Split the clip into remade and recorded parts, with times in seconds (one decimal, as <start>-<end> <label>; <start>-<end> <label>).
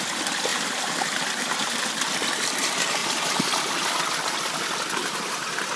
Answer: 0.0-0.5 recorded; 0.5-1.8 remade; 1.8-3.0 recorded; 3.0-3.7 remade; 3.7-5.0 recorded; 5.0-5.8 remade